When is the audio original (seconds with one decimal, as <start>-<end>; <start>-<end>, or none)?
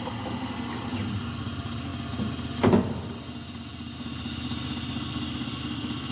0.0-6.1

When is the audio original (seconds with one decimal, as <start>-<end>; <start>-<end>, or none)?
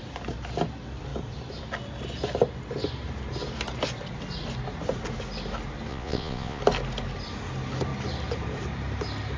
0.0-5.9; 6.6-9.4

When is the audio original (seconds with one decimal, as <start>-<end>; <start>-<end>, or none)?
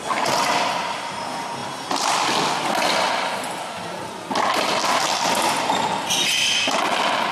0.0-7.3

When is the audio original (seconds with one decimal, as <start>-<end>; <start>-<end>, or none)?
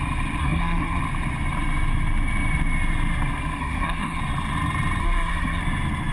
0.0-0.4; 1.0-3.6; 4.2-5.0; 5.6-6.1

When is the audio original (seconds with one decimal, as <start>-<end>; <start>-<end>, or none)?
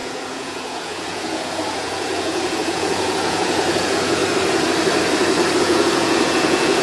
4.2-5.6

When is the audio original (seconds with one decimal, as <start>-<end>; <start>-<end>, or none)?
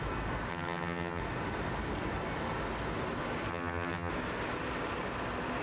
0.0-0.5; 1.2-3.5; 4.1-5.6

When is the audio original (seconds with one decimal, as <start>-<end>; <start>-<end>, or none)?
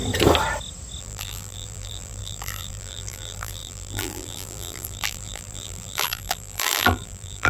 0.0-1.0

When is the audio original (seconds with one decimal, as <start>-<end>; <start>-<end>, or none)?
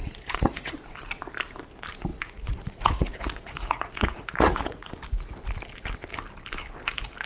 0.7-2.1; 4.9-7.3